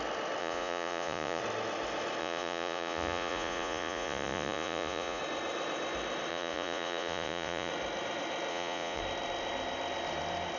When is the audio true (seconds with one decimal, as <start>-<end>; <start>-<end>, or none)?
0.0-0.4; 1.4-2.2; 5.2-6.3; 7.7-8.5; 9.0-10.6